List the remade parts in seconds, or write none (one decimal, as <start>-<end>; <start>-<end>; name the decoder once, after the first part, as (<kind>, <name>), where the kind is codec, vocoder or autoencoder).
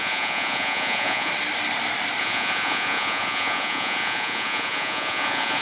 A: 0.0-1.3 (vocoder, Vocos); 2.2-5.6